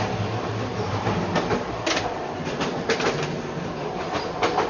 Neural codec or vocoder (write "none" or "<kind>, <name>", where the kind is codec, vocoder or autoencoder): none